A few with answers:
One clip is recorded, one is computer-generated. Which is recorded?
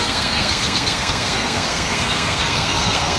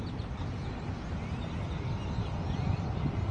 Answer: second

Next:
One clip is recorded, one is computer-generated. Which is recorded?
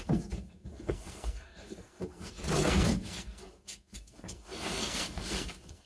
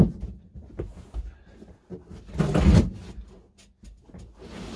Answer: second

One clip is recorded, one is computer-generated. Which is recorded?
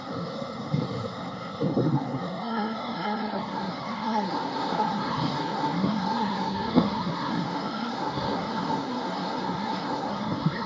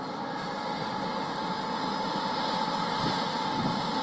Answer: second